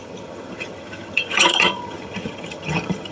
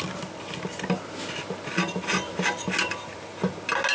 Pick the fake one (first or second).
first